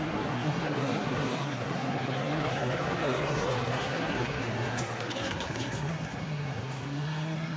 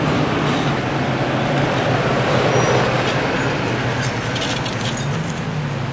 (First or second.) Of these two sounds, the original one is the second